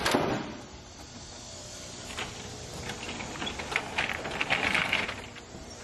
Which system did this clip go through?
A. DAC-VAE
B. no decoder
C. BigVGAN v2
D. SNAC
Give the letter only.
B